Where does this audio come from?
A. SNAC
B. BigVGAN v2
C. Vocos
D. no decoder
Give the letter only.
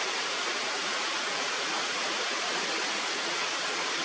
C